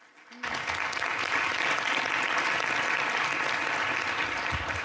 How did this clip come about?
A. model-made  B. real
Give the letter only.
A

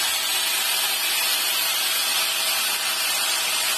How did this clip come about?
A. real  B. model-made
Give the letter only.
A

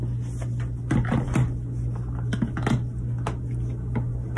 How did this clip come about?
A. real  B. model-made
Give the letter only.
A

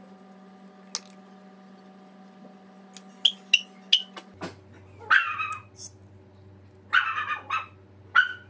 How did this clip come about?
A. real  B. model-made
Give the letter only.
A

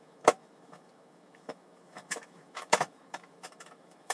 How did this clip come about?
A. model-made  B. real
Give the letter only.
A